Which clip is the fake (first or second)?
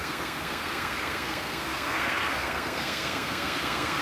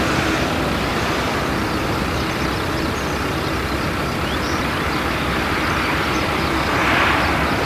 first